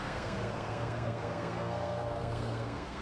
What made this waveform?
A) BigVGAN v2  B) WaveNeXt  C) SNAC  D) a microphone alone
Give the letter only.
C